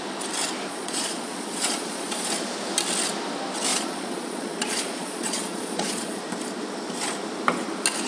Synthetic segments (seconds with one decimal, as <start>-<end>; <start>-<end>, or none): 0.7-2.3; 3.7-6.2